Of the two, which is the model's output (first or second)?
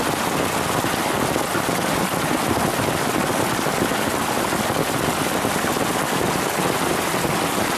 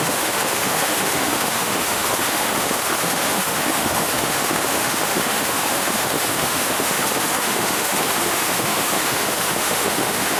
second